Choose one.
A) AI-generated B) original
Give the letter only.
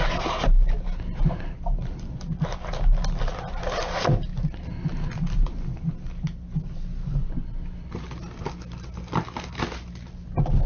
B